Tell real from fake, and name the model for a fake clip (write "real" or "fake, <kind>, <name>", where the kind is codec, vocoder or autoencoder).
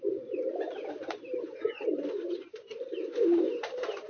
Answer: fake, vocoder, BigVGAN v2